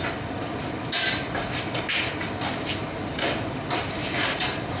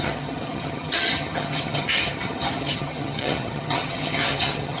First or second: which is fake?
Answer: second